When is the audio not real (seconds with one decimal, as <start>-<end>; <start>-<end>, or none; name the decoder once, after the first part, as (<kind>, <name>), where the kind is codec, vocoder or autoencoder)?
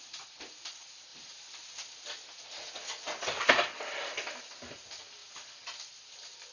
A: 0.0-6.5 (vocoder, BigVGAN v2)